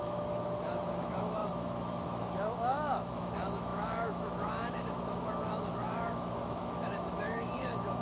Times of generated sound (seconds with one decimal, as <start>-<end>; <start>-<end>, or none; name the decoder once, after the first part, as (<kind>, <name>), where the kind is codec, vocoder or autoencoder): 0.0-8.0 (autoencoder, DAC-VAE)